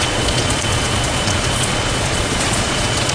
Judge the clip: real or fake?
fake